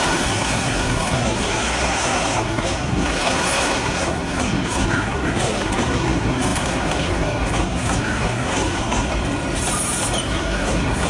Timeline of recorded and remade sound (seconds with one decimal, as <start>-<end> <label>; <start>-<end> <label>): 0.0-9.1 remade; 9.1-10.2 recorded; 10.2-11.1 remade